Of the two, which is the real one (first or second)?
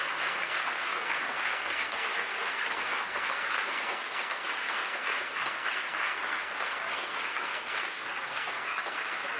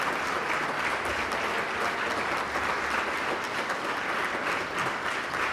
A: second